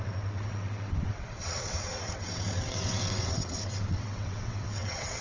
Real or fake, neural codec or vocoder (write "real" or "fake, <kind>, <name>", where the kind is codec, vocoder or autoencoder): fake, vocoder, WaveNeXt